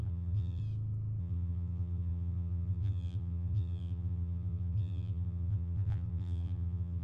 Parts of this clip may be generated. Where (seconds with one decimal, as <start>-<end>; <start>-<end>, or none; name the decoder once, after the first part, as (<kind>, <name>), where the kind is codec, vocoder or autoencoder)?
0.0-0.6 (vocoder, BigVGAN v2); 1.2-7.0